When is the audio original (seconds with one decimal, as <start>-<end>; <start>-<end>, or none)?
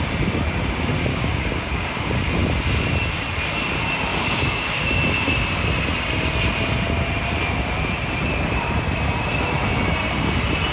0.0-1.1; 2.1-4.1; 4.9-10.7